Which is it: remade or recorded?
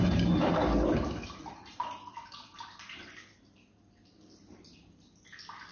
recorded